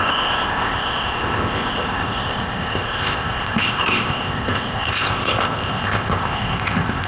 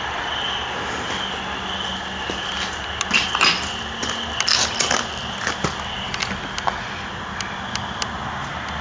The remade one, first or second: first